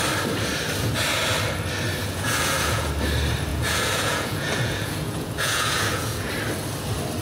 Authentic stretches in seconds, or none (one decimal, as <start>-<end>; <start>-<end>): 0.0-2.0; 2.9-3.5; 6.3-7.2

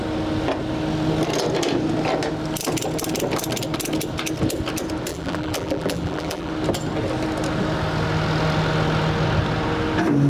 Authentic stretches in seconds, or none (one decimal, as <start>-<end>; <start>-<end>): 0.0-5.1; 6.5-10.3